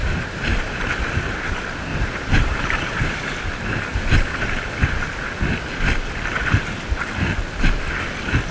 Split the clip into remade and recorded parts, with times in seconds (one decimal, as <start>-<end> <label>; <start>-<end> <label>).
0.0-0.8 remade; 0.8-1.9 recorded; 1.9-3.4 remade; 3.4-8.5 recorded